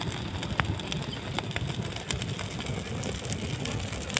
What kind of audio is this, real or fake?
real